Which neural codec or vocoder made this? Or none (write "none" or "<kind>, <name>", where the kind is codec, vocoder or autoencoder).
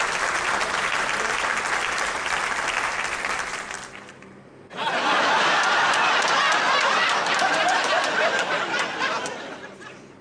vocoder, BigVGAN v2